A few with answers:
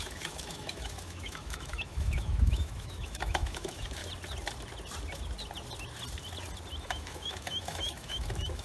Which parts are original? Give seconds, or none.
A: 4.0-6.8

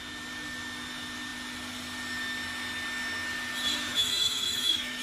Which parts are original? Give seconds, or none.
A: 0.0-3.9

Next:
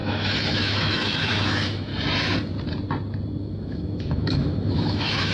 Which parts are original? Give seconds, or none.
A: 1.9-3.4